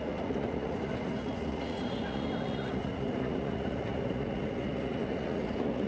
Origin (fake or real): fake